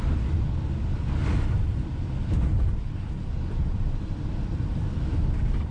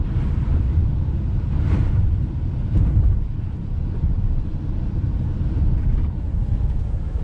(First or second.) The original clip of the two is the first